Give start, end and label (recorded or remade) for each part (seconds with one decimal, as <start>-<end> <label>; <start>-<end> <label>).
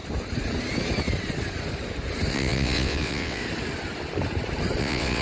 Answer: 0.0-2.3 recorded; 2.3-3.4 remade; 3.4-4.8 recorded; 4.8-5.2 remade